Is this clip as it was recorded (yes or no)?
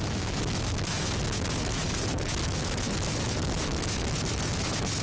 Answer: no